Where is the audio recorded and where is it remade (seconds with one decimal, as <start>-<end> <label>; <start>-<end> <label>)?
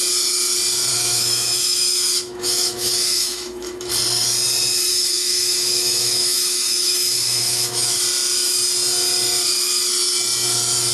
0.0-0.9 recorded; 0.9-3.9 remade; 3.9-4.9 recorded; 4.9-8.0 remade; 8.0-10.9 recorded